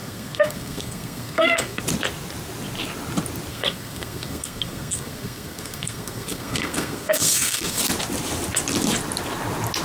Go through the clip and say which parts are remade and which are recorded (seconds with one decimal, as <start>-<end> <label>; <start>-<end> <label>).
0.0-1.8 remade; 1.8-3.5 recorded; 3.5-7.8 remade; 7.8-9.8 recorded